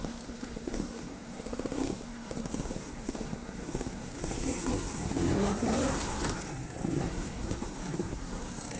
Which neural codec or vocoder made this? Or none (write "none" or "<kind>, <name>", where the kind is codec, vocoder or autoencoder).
codec, SNAC